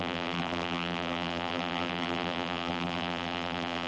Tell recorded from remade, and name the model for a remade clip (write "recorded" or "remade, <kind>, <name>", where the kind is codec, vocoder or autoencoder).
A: remade, vocoder, BigVGAN v2